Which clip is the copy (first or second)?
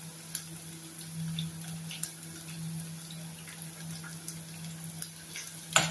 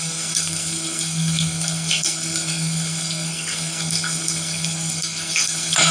second